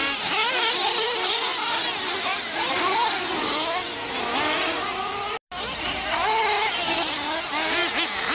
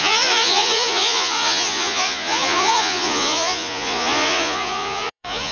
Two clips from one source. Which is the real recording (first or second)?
first